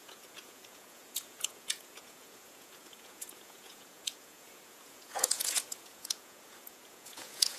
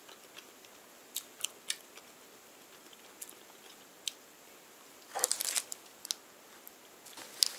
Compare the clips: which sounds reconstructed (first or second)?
first